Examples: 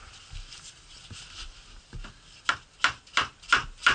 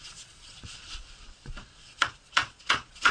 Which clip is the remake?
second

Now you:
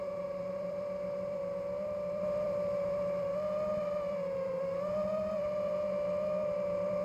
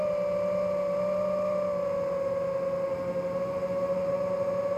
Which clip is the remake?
first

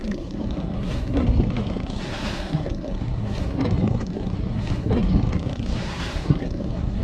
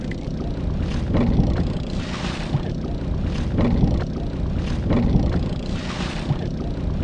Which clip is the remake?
first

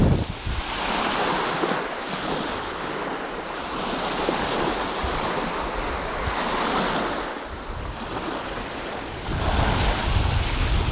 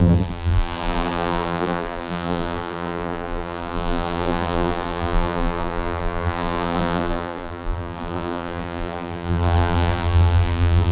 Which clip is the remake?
second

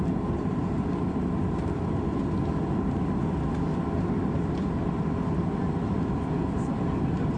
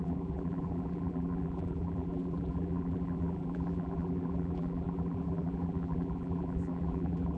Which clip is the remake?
second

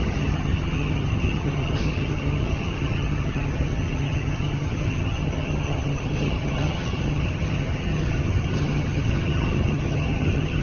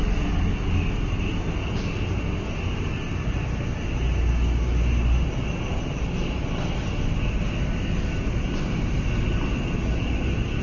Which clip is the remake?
first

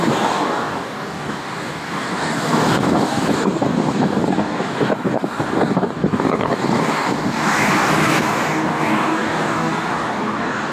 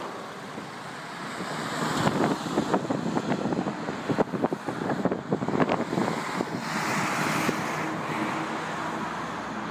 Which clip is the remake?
first